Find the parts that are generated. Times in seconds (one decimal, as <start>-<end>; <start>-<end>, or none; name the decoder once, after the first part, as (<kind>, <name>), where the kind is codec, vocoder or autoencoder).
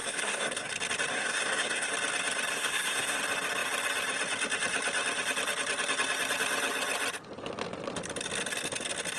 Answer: 0.0-0.7 (codec, SNAC); 1.1-1.9; 2.5-3.2